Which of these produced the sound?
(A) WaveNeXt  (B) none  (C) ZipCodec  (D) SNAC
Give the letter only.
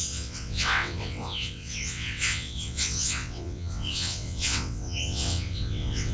A